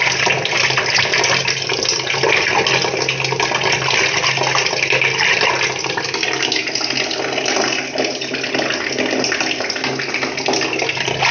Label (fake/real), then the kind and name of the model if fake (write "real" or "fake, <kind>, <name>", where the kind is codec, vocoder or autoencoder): real